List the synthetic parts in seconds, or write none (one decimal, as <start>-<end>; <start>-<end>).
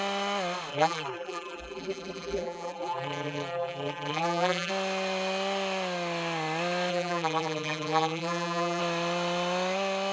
0.7-4.7; 6.9-8.8